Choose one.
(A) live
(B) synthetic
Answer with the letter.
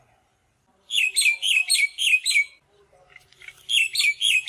A